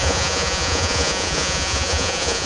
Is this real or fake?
fake